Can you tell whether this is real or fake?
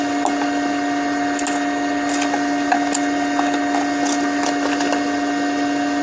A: real